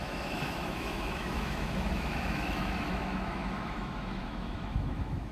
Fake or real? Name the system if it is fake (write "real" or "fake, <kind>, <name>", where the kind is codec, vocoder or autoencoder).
fake, autoencoder, DAC-VAE